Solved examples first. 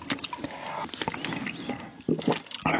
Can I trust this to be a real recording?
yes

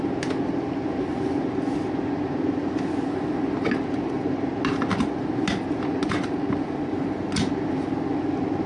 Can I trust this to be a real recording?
yes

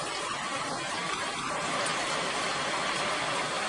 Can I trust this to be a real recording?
yes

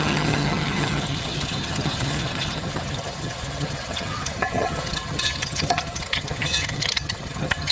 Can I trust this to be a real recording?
no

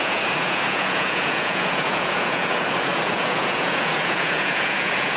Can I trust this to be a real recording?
no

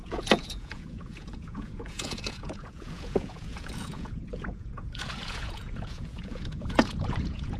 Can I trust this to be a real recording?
no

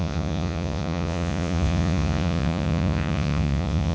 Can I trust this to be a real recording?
no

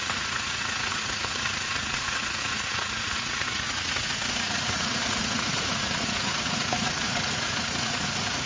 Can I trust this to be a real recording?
no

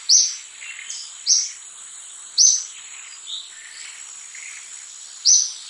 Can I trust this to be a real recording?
yes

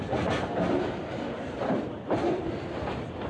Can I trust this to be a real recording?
yes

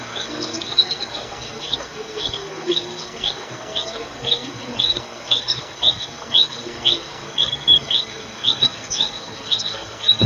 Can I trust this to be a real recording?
no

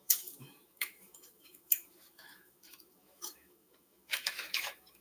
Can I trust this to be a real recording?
no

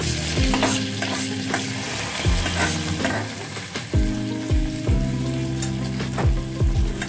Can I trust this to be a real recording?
yes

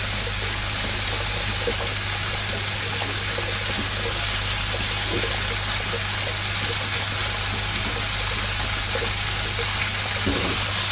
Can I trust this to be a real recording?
yes